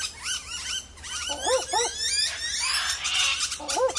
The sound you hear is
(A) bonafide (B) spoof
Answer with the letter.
A